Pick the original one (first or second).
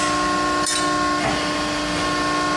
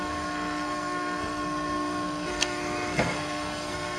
first